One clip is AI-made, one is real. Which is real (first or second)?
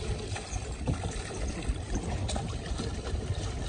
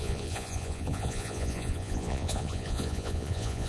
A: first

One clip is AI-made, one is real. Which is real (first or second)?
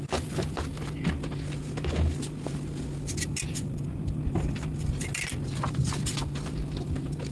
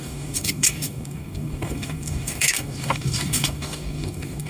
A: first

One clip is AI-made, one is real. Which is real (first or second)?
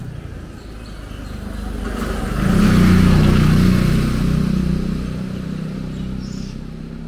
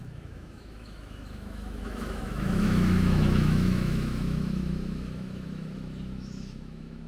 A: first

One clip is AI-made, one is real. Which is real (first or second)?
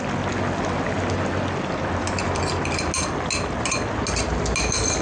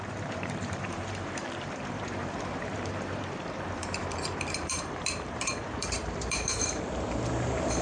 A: first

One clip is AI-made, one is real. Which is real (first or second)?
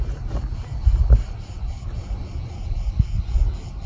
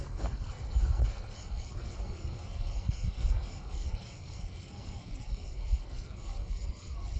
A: first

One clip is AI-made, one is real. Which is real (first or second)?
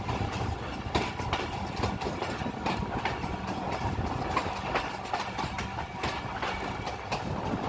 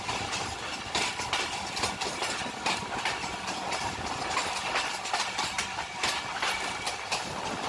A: first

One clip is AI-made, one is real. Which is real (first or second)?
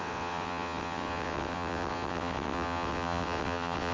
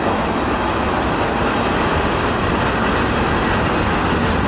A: second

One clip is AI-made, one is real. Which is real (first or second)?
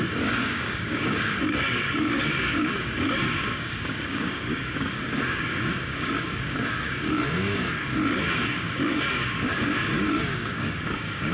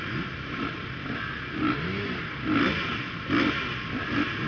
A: second